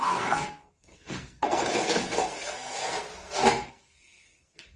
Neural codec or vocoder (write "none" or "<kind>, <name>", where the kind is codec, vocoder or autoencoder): codec, SNAC